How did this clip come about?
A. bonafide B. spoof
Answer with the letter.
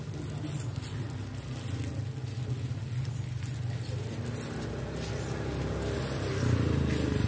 A